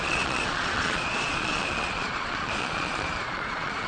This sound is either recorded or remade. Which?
remade